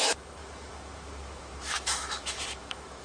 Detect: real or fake fake